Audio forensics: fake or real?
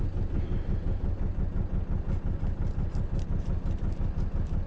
real